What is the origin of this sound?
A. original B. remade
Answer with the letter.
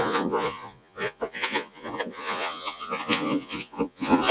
B